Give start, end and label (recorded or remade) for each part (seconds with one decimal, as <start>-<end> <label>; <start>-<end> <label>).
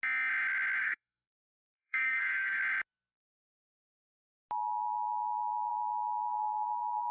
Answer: 0.0-0.8 recorded; 0.8-2.6 remade; 2.6-6.3 recorded; 6.3-7.1 remade